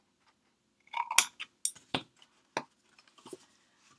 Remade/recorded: recorded